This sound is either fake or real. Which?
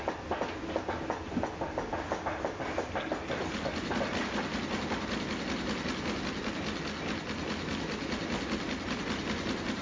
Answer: real